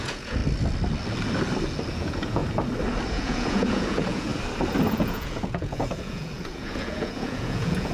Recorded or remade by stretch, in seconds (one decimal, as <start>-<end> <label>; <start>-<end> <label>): 0.0-0.4 remade; 0.4-1.9 recorded; 1.9-2.4 remade; 2.4-3.1 recorded; 3.1-4.3 remade; 4.3-4.9 recorded; 4.9-7.9 remade